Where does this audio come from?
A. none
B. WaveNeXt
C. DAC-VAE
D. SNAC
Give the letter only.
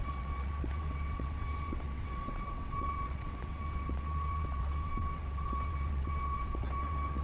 B